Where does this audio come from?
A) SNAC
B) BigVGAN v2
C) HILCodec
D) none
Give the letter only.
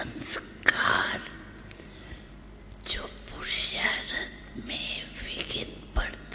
B